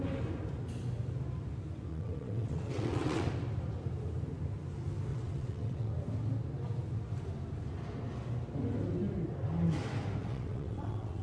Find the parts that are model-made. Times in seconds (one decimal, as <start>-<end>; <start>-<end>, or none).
1.9-3.3; 5.1-5.9; 10.2-11.2